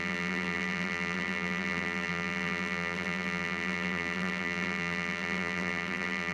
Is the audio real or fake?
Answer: fake